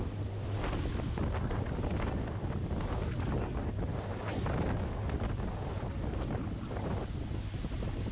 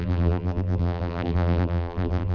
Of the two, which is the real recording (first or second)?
first